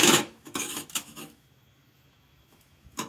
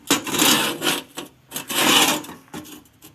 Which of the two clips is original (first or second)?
second